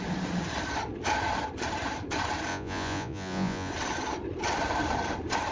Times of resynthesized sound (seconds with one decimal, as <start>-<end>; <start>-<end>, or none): 2.5-3.7